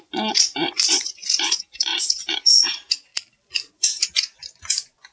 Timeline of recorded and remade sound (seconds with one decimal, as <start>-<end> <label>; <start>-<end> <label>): 0.0-3.1 remade; 3.1-3.7 recorded; 3.7-5.1 remade

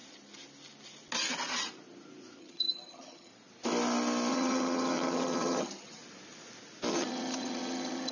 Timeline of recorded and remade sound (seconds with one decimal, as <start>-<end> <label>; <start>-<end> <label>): 0.0-2.4 recorded; 2.4-3.3 remade; 3.3-4.3 recorded; 4.3-6.0 remade; 6.0-6.9 recorded; 6.9-8.1 remade

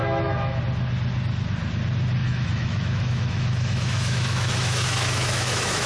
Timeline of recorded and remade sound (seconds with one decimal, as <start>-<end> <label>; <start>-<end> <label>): 0.0-0.6 remade; 0.6-2.2 recorded; 2.2-5.9 remade